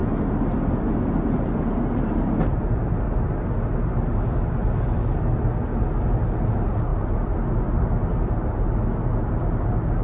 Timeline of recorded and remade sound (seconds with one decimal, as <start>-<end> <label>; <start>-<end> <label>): 0.0-10.0 recorded